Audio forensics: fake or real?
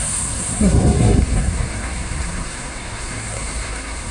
fake